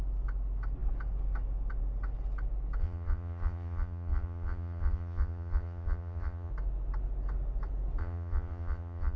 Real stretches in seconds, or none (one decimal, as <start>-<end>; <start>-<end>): 0.0-2.8; 6.5-8.0